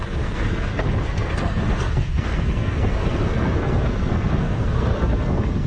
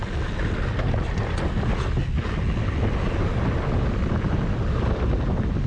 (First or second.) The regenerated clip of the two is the first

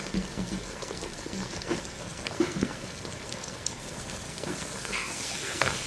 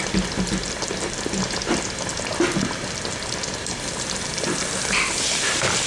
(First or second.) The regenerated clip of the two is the first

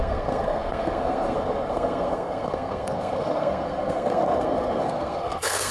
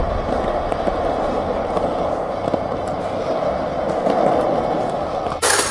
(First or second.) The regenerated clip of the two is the first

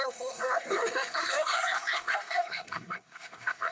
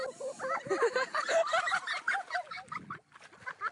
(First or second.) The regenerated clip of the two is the first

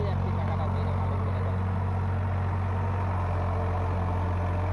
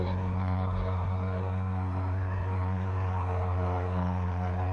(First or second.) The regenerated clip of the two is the second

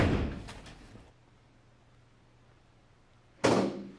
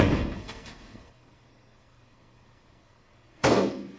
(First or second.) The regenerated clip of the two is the second